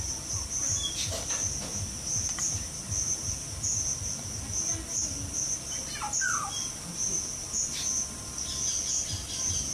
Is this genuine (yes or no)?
yes